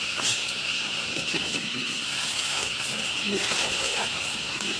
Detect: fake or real fake